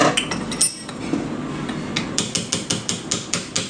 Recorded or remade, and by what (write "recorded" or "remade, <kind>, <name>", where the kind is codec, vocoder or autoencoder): recorded